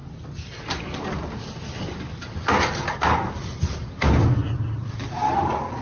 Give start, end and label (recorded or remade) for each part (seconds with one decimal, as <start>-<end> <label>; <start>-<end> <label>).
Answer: 0.0-5.8 recorded